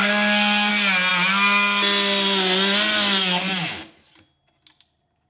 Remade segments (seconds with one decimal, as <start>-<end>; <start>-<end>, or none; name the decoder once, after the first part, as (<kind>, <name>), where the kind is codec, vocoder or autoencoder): 0.0-0.7 (codec, SNAC)